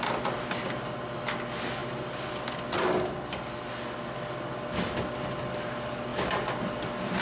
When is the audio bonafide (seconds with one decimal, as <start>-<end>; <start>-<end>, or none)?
0.0-7.2